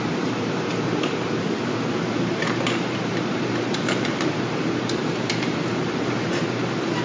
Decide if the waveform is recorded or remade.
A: remade